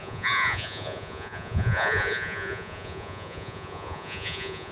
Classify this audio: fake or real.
fake